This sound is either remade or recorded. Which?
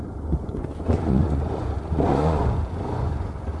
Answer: remade